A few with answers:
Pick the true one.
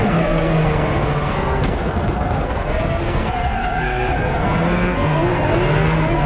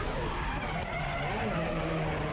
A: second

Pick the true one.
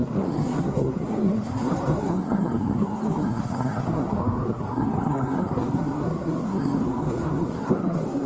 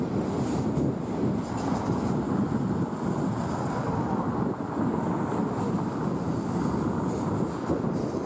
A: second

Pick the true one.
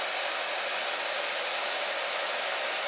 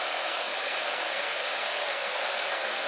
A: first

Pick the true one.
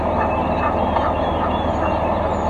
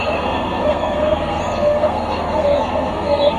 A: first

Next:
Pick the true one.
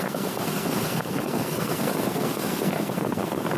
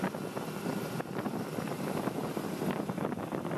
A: second